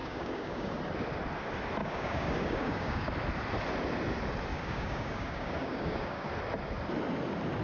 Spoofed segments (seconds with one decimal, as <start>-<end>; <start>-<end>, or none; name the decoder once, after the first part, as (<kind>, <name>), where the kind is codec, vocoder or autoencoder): 0.0-0.8 (codec, DAC); 1.8-3.1; 4.5-6.3